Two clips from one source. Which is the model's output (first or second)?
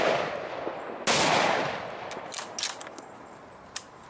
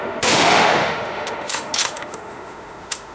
second